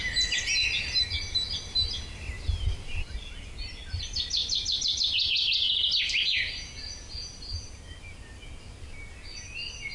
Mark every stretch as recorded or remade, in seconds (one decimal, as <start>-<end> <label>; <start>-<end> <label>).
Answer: 0.0-9.9 recorded